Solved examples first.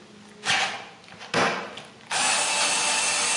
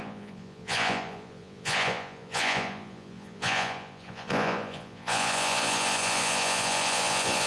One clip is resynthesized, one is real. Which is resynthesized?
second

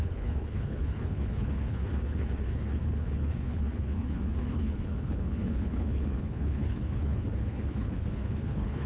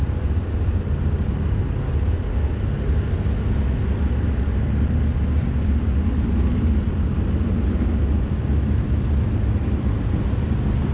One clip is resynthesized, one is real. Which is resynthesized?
first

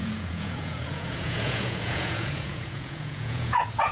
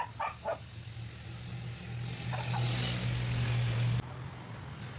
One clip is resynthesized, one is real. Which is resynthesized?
first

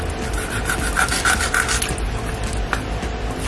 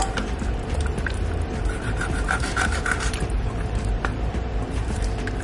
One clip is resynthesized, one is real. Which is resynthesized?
second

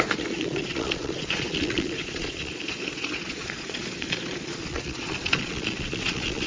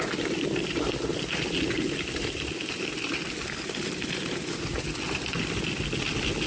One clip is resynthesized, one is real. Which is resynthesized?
first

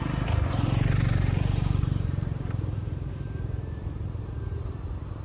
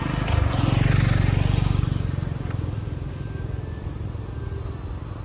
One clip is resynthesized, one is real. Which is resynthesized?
first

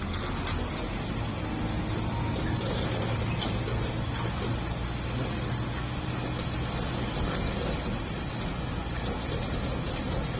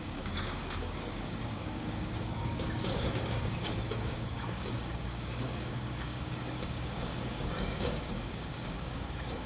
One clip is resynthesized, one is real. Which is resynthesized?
second